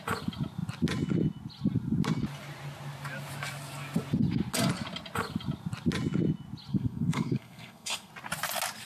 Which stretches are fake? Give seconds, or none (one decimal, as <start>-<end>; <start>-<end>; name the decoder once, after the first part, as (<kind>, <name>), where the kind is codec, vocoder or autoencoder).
6.7-8.1 (codec, SNAC)